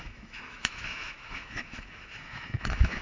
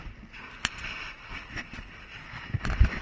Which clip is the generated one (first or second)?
first